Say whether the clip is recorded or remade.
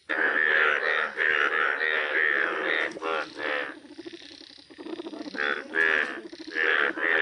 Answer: recorded